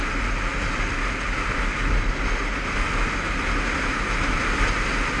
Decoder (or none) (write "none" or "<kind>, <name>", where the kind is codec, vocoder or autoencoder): none